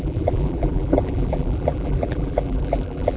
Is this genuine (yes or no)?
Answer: no